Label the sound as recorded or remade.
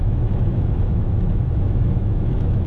remade